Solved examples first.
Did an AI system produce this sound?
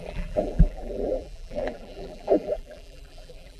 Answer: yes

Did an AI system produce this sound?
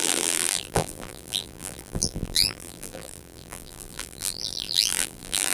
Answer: yes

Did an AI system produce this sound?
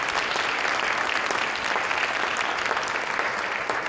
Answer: no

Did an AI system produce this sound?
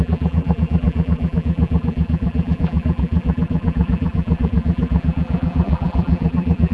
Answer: yes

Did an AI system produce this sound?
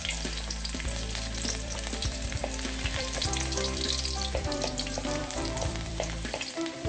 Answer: yes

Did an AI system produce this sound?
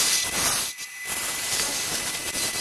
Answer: yes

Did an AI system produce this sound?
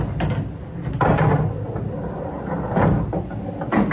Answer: no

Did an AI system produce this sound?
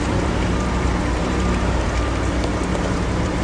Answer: yes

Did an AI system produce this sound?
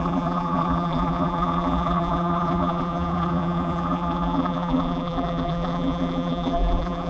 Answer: yes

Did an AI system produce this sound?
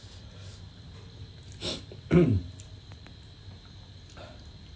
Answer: no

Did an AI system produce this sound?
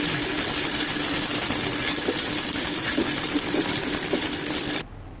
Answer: yes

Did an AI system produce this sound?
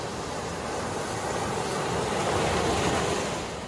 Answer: no